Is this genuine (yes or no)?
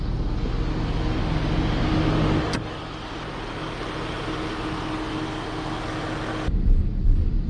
yes